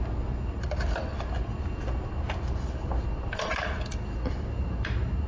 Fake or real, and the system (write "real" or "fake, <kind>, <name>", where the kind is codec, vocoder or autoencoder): real